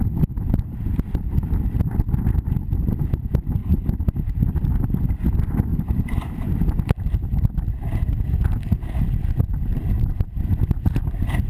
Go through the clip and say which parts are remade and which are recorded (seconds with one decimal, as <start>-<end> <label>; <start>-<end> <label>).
0.0-5.7 recorded; 5.7-6.4 remade; 6.4-9.7 recorded; 9.7-11.5 remade